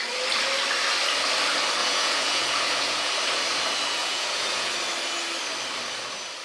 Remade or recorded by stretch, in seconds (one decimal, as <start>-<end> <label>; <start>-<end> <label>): 0.0-1.8 recorded; 1.8-3.1 remade; 3.1-4.0 recorded; 4.0-4.7 remade; 4.7-6.4 recorded